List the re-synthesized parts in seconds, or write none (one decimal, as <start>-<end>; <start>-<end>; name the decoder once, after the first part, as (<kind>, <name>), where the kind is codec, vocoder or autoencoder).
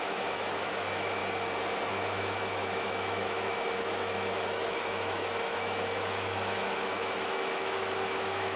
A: 0.0-1.2 (autoencoder, DAC-VAE); 1.9-8.6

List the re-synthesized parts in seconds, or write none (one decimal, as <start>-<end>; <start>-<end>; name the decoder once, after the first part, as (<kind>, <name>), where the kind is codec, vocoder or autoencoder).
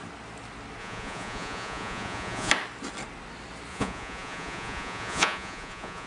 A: 0.8-2.5 (vocoder, Vocos); 3.7-6.1